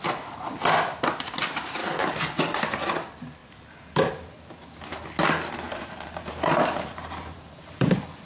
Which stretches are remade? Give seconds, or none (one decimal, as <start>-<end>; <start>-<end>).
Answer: 1.8-2.8; 3.4-4.1; 5.7-7.9